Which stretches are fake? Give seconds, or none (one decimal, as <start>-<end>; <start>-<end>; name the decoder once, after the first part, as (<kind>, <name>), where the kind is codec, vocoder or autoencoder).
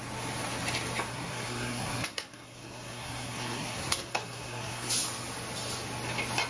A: 1.1-5.0 (codec, SNAC)